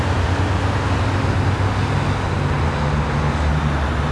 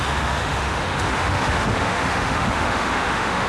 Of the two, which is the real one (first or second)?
first